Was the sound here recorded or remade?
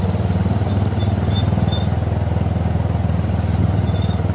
recorded